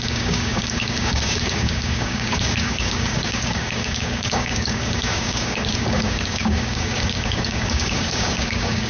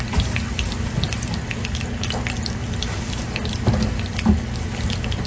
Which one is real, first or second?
second